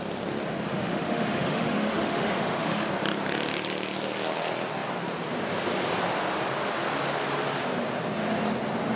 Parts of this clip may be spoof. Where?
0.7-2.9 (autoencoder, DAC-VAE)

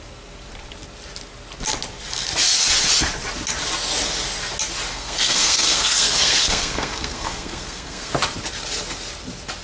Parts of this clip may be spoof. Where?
4.9-8.1 (codec, SNAC)

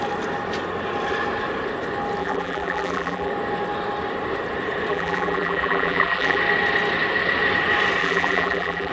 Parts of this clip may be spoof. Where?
2.2-3.3 (vocoder, BigVGAN v2); 4.9-6.4; 8.0-8.9